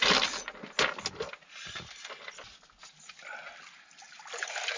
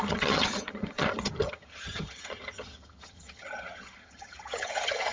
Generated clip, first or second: second